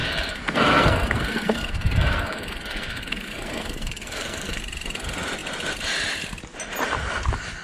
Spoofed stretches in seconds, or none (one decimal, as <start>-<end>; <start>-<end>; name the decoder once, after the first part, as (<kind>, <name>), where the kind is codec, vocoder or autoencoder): 0.0-4.6 (codec, SNAC)